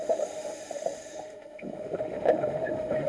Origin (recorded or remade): remade